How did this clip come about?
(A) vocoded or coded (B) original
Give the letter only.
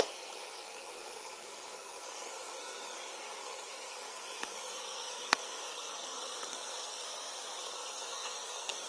A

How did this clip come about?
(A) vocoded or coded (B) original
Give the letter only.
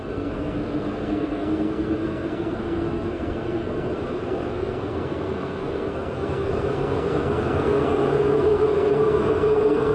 A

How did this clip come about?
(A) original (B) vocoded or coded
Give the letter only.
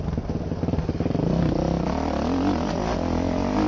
A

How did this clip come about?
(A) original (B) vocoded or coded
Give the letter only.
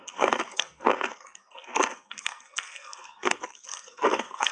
B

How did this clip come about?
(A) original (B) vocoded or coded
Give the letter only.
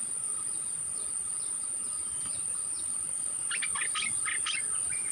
A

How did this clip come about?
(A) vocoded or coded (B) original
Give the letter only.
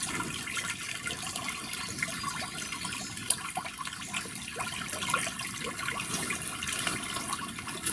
B